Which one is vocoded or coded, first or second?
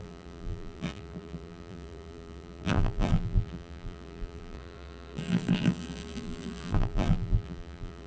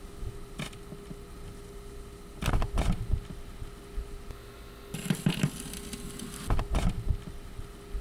first